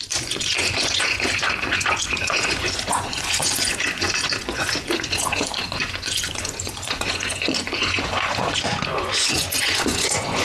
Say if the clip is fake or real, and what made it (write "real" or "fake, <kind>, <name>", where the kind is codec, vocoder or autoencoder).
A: fake, vocoder, Vocos